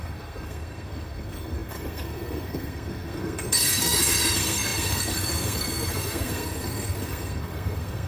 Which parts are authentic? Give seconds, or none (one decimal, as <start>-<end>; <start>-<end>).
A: none